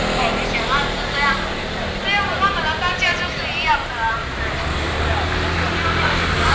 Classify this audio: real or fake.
real